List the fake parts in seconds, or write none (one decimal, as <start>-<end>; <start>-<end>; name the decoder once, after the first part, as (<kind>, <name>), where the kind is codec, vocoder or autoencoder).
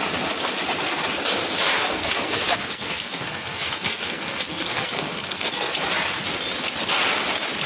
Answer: 1.8-5.7 (codec, SNAC)